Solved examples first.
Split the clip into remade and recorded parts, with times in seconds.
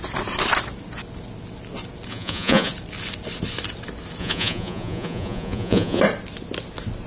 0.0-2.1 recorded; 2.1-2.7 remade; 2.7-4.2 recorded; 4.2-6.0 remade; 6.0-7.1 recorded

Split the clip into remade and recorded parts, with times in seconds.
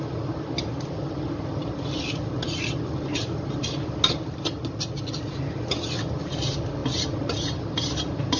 0.0-8.4 recorded